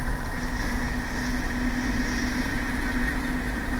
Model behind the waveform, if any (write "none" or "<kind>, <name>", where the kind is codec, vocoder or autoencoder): none